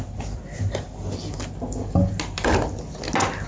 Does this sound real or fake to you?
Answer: real